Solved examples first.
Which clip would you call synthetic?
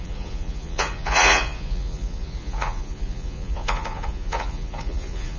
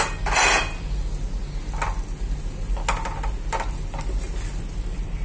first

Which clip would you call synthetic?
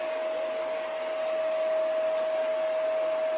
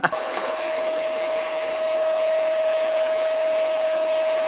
second